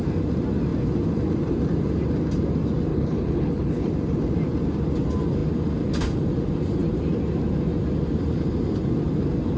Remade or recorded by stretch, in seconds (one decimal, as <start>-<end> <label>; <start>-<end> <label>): 0.0-2.9 recorded; 2.9-3.9 remade; 3.9-9.6 recorded